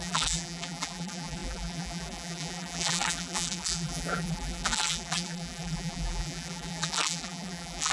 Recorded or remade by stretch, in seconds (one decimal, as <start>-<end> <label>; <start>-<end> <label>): 0.0-7.9 remade